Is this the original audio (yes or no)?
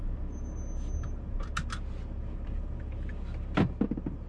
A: yes